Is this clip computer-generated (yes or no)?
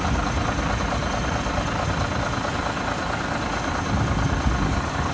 no